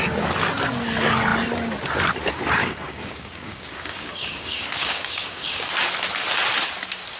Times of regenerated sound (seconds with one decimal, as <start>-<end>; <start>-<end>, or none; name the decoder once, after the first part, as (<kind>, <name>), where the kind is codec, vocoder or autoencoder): 2.6-5.7 (codec, DAC)